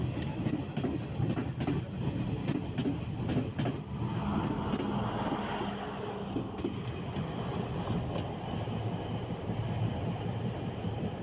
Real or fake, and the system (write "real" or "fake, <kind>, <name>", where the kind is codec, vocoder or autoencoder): real